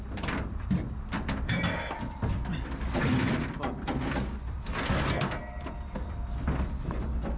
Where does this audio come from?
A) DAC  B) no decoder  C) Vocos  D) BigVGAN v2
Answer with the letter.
B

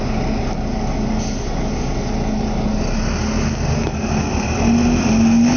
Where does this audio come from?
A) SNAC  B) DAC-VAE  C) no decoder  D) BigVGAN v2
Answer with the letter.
C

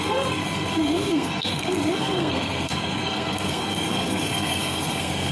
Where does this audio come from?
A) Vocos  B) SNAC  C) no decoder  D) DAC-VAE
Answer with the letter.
B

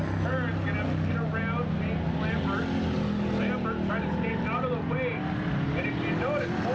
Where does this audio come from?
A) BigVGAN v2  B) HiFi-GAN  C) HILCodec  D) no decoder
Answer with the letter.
D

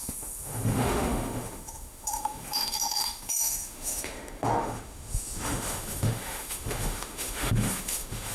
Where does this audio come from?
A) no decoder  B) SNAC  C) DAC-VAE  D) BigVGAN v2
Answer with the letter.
C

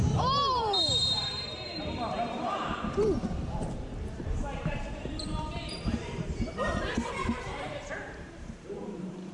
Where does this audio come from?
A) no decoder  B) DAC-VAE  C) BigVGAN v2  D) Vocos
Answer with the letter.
C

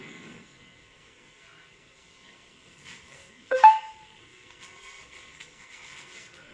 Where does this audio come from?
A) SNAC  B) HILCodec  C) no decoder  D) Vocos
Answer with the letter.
A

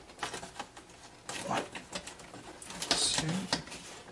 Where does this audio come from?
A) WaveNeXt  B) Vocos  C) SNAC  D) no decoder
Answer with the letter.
D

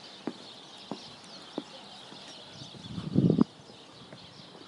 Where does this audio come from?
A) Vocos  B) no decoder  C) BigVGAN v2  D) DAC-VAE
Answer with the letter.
B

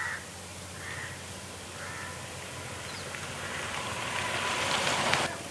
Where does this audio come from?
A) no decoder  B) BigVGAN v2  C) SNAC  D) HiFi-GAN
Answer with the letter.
A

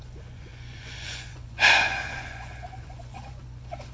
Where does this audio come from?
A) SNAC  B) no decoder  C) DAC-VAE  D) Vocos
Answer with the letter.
D